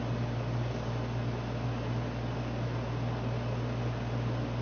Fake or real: real